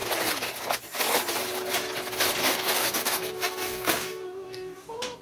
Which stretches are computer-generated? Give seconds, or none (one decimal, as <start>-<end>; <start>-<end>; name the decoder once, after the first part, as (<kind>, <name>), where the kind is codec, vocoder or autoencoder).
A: 2.4-5.2 (codec, DAC)